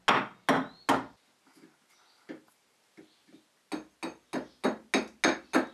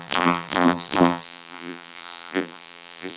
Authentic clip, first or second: first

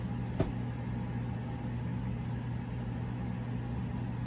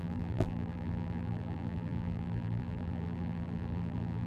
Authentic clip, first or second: first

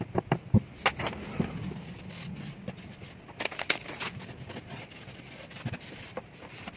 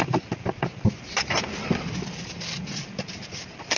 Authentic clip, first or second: first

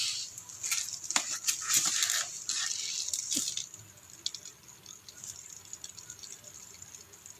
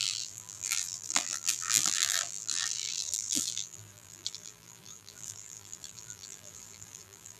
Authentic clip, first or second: first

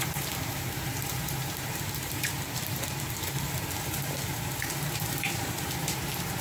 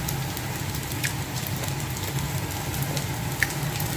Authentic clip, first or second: second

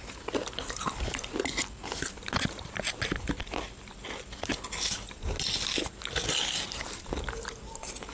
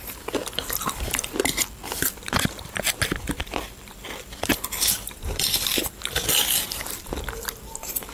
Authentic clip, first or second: first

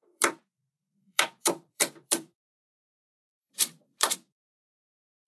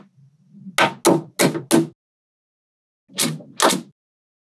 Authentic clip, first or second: second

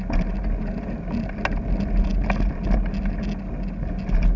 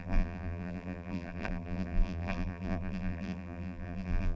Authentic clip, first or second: first